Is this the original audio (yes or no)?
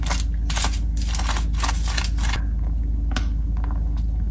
yes